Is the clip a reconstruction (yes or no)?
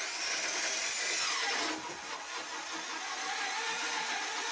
no